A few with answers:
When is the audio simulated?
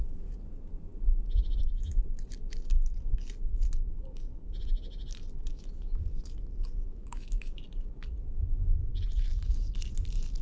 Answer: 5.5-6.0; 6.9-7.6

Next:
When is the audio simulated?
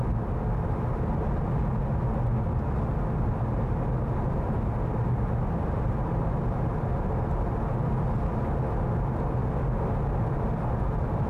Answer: none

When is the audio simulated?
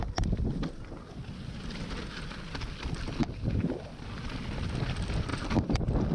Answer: none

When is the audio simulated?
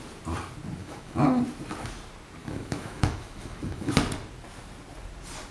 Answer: 0.8-1.4; 2.4-3.9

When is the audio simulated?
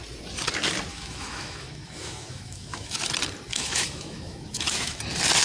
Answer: 0.9-3.0; 3.5-5.0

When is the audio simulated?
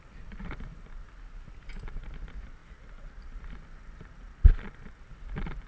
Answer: none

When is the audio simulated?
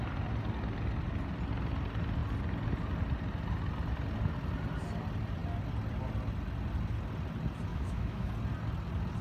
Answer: 7.7-8.3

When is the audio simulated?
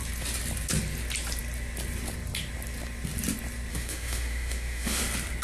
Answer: 3.7-5.0